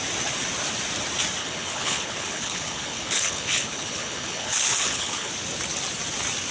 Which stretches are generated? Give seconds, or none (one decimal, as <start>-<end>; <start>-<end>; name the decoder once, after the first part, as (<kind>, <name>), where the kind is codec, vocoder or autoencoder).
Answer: 1.4-5.3 (codec, HILCodec)